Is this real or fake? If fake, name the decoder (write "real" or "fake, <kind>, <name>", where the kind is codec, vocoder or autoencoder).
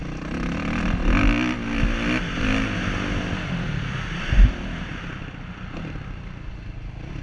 real